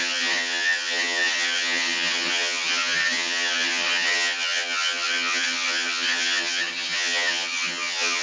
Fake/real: fake